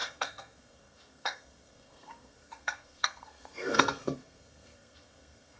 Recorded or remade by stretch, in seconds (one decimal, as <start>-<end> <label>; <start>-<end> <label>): 0.0-5.6 remade